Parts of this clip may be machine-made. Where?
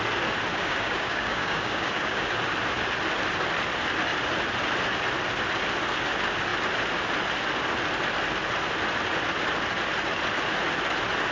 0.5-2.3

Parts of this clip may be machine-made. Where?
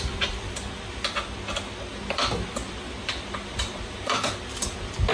2.6-4.3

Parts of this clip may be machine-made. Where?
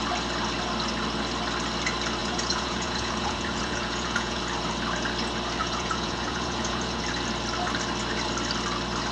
2.2-4.4; 5.6-7.0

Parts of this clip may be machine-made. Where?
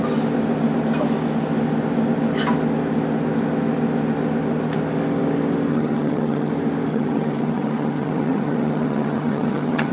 5.7-6.5; 6.9-9.9